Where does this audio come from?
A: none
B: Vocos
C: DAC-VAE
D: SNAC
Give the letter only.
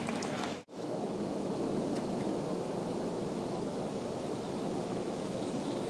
C